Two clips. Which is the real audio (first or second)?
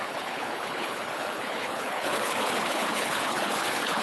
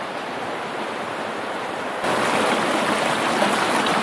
second